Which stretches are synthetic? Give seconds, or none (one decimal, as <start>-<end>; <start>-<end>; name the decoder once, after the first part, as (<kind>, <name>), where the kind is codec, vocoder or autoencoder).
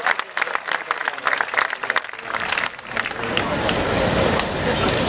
none